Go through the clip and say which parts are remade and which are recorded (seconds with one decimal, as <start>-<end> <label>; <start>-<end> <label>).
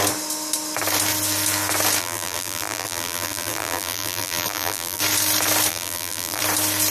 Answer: 0.0-2.0 recorded; 2.0-5.0 remade; 5.0-5.7 recorded; 5.7-6.4 remade; 6.4-6.9 recorded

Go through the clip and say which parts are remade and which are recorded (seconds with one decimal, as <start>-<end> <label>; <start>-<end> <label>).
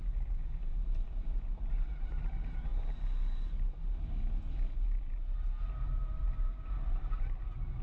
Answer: 0.0-2.7 remade; 2.7-3.2 recorded; 3.2-3.8 remade; 3.8-6.2 recorded; 6.2-7.8 remade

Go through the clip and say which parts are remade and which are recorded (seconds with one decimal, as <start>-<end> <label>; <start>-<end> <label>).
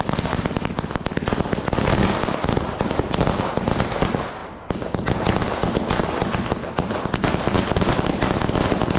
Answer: 0.0-4.4 recorded; 4.4-5.1 remade; 5.1-9.0 recorded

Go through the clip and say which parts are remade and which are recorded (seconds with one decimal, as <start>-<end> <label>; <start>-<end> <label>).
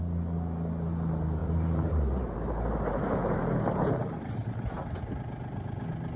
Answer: 0.0-1.4 recorded; 1.4-5.1 remade; 5.1-6.2 recorded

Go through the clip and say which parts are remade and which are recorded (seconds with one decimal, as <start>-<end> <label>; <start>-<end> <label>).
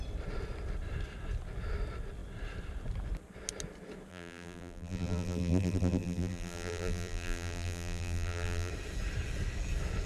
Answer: 0.0-4.1 recorded; 4.1-8.7 remade; 8.7-10.1 recorded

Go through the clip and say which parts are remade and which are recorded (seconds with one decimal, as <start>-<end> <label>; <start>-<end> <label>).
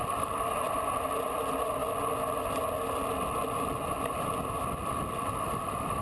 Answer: 0.0-1.8 remade; 1.8-5.1 recorded; 5.1-6.0 remade